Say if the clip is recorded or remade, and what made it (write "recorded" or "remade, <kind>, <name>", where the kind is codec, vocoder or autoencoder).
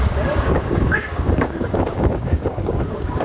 remade, codec, DAC